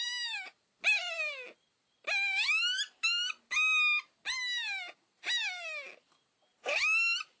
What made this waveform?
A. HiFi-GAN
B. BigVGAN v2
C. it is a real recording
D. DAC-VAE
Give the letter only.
C